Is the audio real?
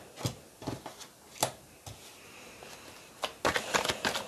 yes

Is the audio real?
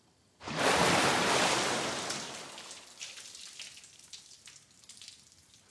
yes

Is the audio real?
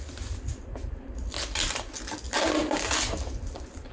yes